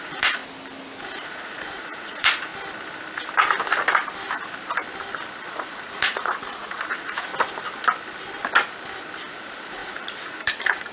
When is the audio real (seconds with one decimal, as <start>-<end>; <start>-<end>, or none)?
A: 0.4-1.0; 2.5-5.5; 7.3-9.3